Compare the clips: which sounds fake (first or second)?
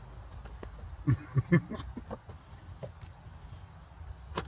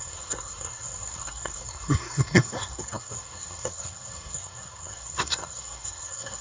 second